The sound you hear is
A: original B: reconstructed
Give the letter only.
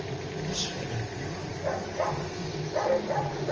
A